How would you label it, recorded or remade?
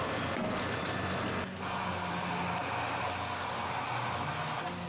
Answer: recorded